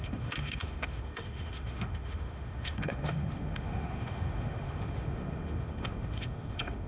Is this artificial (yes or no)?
yes